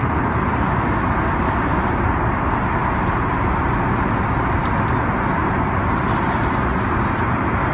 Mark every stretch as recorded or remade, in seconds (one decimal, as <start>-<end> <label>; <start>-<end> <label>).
0.0-7.7 recorded